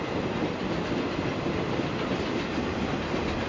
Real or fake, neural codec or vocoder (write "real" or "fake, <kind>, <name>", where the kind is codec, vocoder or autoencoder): real